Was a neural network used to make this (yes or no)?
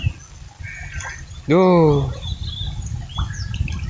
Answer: no